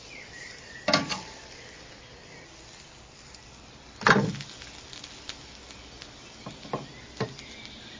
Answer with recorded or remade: recorded